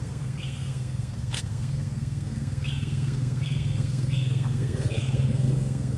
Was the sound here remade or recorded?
remade